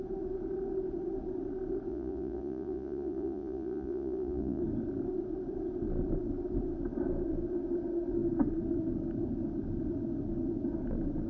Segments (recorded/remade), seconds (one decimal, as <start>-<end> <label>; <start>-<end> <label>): 0.0-1.9 recorded; 1.9-4.6 remade; 4.6-11.3 recorded